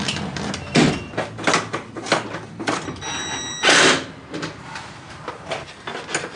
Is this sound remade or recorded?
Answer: recorded